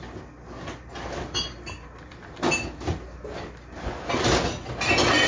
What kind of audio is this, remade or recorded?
recorded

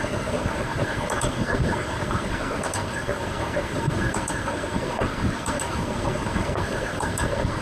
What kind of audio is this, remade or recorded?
remade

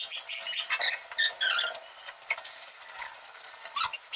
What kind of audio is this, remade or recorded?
recorded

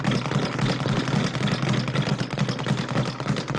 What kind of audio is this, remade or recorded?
recorded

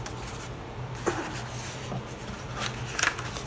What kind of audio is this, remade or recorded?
recorded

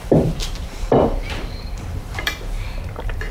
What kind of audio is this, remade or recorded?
remade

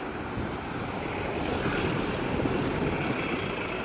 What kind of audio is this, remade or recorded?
recorded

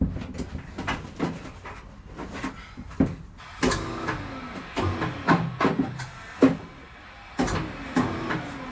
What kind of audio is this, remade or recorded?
recorded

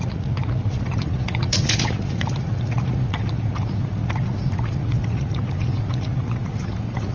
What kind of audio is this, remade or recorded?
remade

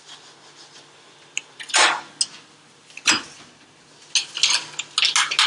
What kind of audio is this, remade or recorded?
recorded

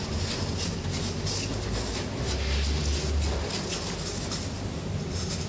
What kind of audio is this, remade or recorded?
recorded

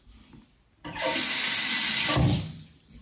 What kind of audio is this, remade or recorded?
recorded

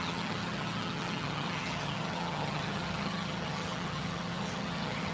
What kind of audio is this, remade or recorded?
remade